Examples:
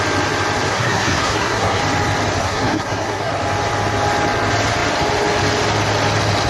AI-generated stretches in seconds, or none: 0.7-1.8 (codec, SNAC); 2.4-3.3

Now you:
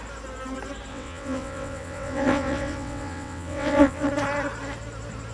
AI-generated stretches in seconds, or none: 0.9-4.1 (vocoder, WaveNeXt)

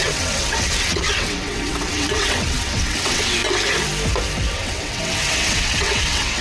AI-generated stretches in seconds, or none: 0.0-3.4 (vocoder, WaveNeXt); 4.5-6.4

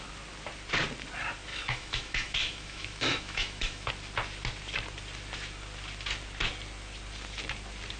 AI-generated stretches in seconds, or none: 1.5-3.9 (autoencoder, DAC-VAE)

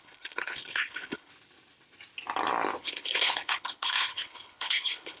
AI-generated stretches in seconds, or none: 0.0-1.3 (codec, HILCodec); 2.8-5.2

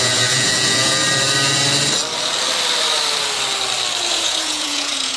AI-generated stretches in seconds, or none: 0.0-1.0 (vocoder, Vocos); 4.1-5.2